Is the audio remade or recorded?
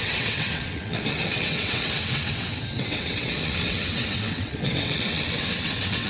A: remade